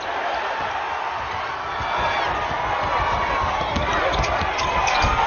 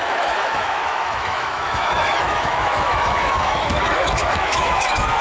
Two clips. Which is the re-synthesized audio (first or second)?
second